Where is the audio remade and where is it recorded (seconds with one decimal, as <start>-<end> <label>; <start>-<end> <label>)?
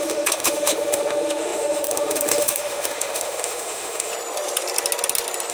0.0-4.1 remade; 4.1-5.5 recorded